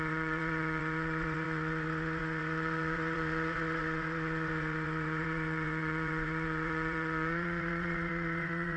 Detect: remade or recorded remade